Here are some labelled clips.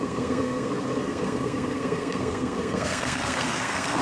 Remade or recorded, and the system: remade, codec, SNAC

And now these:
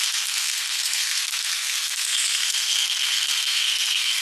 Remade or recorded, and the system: remade, codec, SNAC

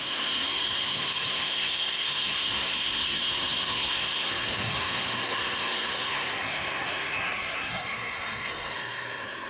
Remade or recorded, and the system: remade, codec, SNAC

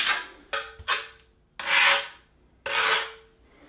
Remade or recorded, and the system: recorded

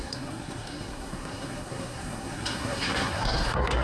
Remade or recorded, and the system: remade, codec, SNAC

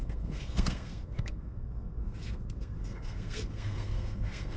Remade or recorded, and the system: remade, codec, SNAC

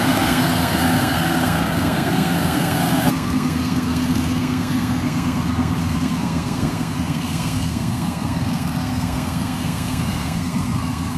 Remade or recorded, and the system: remade, codec, SNAC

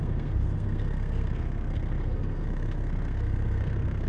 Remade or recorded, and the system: remade, codec, SNAC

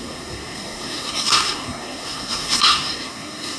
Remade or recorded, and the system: remade, codec, SNAC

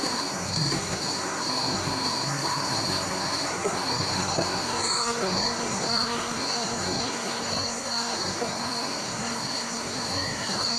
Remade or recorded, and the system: remade, codec, SNAC